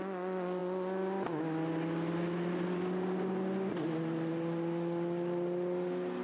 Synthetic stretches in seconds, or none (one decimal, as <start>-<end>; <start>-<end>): none